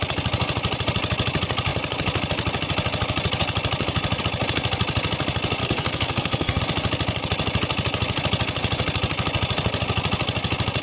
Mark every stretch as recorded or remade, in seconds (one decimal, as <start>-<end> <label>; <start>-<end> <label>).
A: 0.0-5.6 recorded; 5.6-6.6 remade; 6.6-10.8 recorded